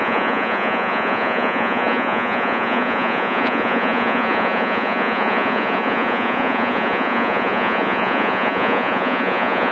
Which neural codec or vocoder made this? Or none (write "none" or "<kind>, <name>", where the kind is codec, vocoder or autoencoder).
vocoder, Vocos